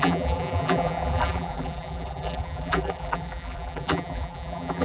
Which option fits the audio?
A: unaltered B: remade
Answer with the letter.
B